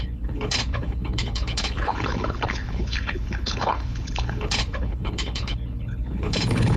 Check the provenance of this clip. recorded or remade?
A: remade